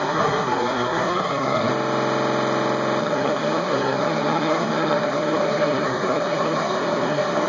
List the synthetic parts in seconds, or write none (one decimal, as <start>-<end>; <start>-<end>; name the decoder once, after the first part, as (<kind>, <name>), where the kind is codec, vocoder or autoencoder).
0.0-1.7 (codec, SNAC); 3.0-7.5